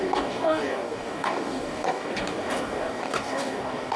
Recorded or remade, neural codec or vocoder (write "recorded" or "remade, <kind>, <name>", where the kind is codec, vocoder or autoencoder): remade, codec, DAC